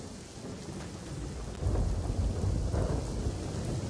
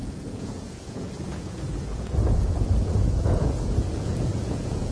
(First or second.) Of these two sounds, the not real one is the second